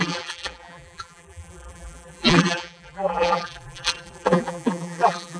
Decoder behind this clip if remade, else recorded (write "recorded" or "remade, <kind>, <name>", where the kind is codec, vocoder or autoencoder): remade, vocoder, BigVGAN v2